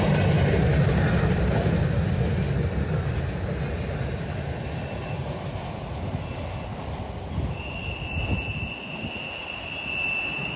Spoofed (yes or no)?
no